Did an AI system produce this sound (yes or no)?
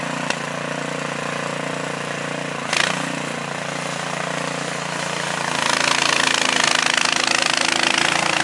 no